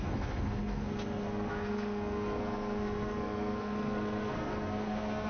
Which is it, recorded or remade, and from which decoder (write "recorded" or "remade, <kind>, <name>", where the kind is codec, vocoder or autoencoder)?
remade, codec, SNAC